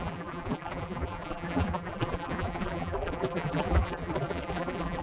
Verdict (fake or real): fake